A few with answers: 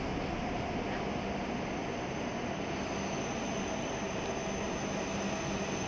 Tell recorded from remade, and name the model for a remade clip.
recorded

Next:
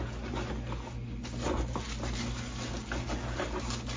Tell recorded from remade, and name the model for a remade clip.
recorded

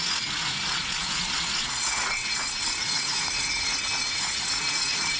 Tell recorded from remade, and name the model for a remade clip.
remade, vocoder, Vocos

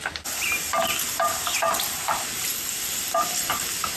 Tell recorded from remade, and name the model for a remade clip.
recorded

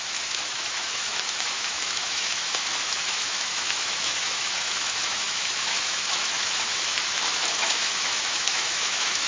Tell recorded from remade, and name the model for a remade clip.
remade, autoencoder, DAC-VAE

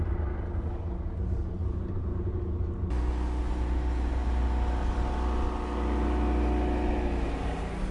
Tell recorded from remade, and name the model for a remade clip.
recorded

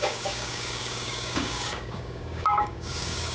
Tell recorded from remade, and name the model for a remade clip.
remade, codec, DAC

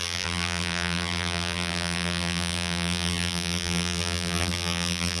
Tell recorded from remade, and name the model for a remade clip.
remade, vocoder, BigVGAN v2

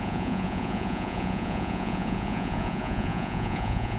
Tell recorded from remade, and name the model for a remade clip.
remade, vocoder, Vocos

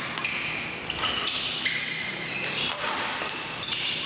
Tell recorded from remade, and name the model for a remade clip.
recorded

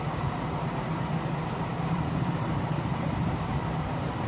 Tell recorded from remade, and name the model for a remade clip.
remade, vocoder, BigVGAN v2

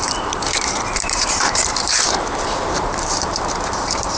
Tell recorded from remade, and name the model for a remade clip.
remade, vocoder, BigVGAN v2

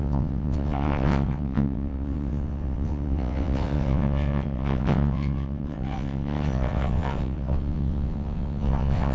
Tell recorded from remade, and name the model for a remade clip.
remade, vocoder, WaveNeXt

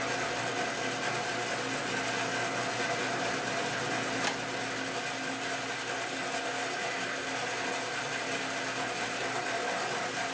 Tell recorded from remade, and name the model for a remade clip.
recorded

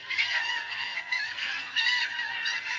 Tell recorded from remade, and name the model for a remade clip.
remade, codec, SNAC